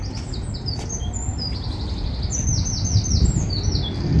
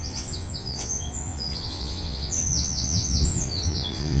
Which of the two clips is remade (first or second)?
second